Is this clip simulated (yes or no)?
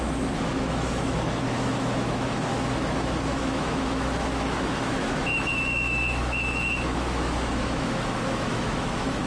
yes